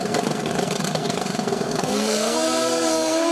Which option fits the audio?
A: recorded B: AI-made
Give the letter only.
B